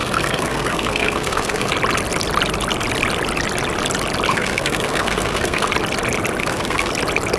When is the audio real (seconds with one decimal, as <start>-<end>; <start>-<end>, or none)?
1.7-4.3; 5.7-6.4; 6.9-7.4